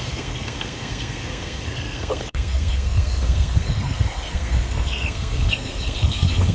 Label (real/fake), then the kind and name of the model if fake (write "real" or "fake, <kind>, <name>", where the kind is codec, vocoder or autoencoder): fake, codec, SNAC